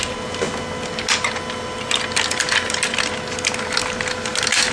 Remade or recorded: recorded